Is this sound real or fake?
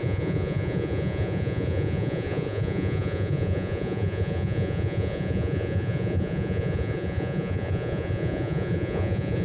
fake